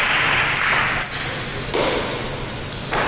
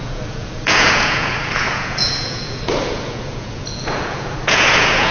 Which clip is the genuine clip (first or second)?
first